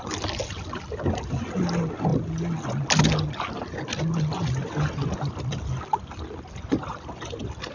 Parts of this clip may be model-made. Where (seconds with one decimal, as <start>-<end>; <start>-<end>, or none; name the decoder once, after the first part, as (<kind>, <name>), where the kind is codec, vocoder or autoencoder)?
none